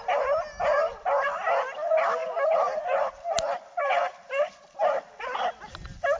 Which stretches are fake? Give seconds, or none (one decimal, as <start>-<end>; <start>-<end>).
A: 2.2-2.8; 3.8-5.7